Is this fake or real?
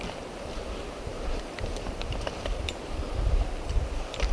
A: fake